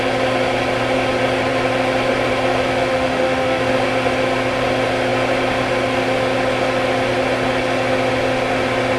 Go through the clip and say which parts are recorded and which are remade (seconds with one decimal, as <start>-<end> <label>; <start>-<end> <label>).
0.0-2.9 recorded; 2.9-3.6 remade; 3.6-9.0 recorded